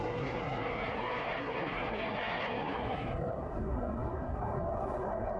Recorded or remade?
remade